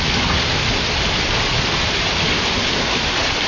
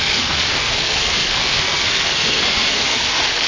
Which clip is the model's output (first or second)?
second